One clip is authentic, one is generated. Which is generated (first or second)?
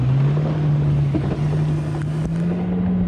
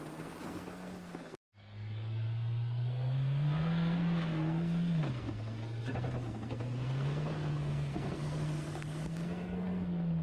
second